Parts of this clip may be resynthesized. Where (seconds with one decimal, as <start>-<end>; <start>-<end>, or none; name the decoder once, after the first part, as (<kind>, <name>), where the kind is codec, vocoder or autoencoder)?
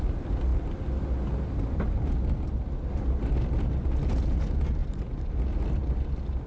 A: 4.8-5.3 (vocoder, BigVGAN v2)